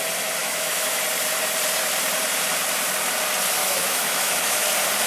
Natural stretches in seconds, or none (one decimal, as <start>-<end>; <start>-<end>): 0.0-0.4; 1.0-3.6; 4.6-5.1